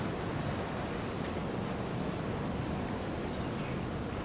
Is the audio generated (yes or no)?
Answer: no